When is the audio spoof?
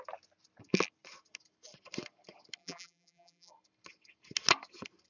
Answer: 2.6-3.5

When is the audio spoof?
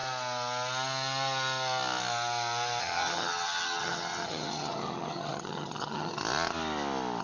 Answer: 2.8-6.2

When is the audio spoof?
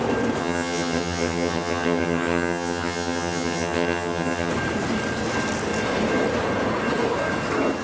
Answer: 0.4-4.5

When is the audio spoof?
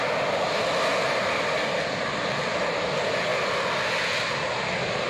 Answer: none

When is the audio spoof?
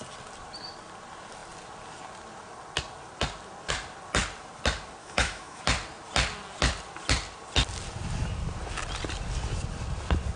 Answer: 5.0-5.6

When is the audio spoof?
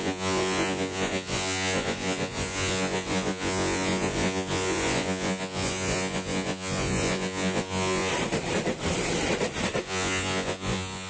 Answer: 0.0-8.1; 9.8-11.1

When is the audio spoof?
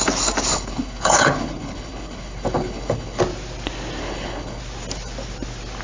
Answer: 0.5-3.2; 4.0-4.6